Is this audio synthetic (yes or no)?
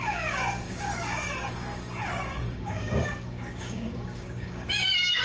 yes